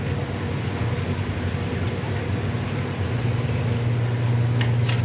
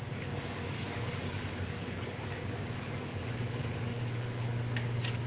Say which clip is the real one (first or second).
first